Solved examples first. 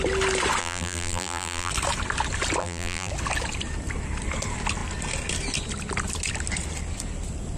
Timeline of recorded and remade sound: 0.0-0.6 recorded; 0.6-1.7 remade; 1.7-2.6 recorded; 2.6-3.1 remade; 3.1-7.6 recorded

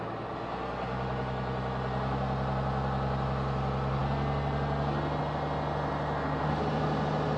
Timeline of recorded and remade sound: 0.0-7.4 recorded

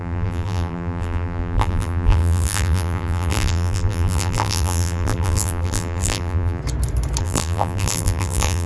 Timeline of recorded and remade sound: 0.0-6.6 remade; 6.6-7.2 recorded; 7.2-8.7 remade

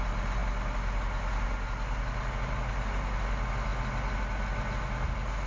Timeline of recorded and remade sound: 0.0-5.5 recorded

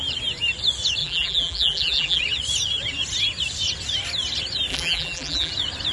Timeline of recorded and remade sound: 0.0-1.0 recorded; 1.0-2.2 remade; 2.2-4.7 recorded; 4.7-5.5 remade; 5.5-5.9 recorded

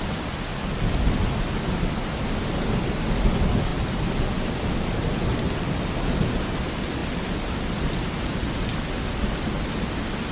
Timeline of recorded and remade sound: 0.0-3.7 recorded; 3.7-5.8 remade; 5.8-8.3 recorded; 8.3-8.8 remade; 8.8-10.3 recorded

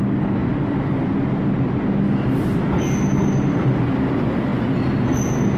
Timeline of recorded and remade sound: 0.0-5.6 recorded